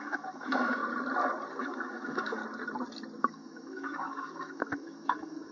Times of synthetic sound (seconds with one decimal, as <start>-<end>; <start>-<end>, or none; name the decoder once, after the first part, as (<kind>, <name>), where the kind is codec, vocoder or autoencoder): 0.0-0.8 (autoencoder, DAC-VAE); 1.6-2.4; 3.2-5.5